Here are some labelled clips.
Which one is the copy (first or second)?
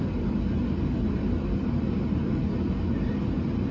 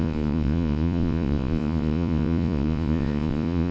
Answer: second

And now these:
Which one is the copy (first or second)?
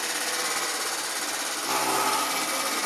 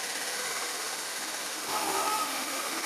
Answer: second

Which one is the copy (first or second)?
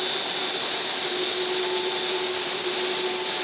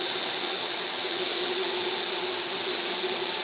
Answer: second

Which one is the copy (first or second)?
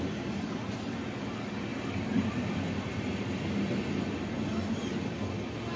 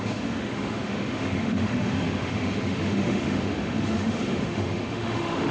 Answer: second